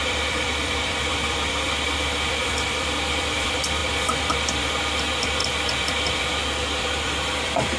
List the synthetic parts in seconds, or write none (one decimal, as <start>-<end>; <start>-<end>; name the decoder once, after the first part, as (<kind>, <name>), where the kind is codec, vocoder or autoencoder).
0.0-7.8 (vocoder, BigVGAN v2)